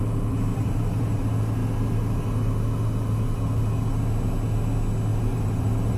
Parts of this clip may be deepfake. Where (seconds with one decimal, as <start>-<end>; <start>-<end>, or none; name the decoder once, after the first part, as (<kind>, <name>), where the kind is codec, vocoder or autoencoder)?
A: 0.5-1.2 (vocoder, BigVGAN v2); 5.1-6.0